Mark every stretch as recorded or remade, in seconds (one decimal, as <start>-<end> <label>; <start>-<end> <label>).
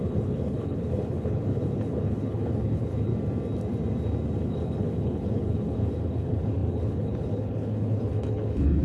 0.0-3.1 remade; 3.1-4.4 recorded; 4.4-8.8 remade